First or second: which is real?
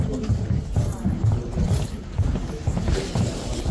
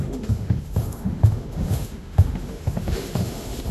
first